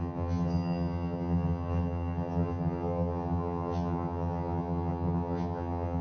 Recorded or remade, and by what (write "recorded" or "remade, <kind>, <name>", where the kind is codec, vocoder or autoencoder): remade, vocoder, HiFi-GAN